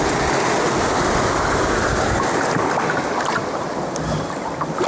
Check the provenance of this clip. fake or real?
real